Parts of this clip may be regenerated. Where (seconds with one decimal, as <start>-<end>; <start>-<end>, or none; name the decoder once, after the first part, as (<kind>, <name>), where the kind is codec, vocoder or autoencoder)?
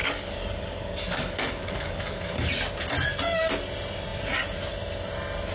0.0-2.5 (codec, DAC)